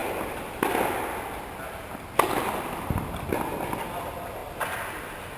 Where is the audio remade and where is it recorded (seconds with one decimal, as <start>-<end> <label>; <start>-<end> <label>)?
0.0-0.5 remade; 0.5-5.4 recorded